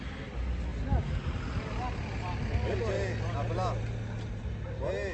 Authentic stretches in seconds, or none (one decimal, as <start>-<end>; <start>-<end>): 0.0-5.1